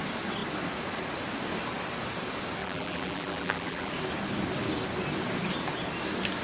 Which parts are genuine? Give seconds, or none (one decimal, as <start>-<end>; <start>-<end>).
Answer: 0.0-2.6; 3.9-6.4